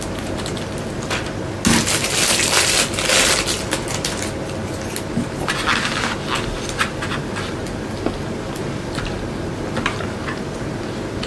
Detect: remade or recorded recorded